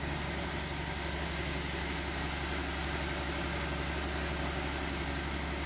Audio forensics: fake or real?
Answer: real